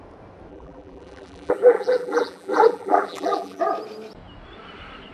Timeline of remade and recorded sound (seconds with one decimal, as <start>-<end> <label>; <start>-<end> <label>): 0.0-0.5 recorded; 0.5-3.6 remade; 3.6-5.1 recorded